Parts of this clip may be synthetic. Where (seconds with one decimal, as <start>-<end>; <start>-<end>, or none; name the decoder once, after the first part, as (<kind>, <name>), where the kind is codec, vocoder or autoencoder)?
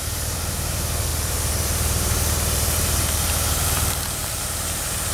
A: 0.0-5.1 (vocoder, BigVGAN v2)